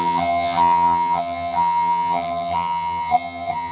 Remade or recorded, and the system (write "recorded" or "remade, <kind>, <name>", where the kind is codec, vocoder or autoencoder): remade, vocoder, HiFi-GAN